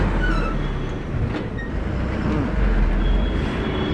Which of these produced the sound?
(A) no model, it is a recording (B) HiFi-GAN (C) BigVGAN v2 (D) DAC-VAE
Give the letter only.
A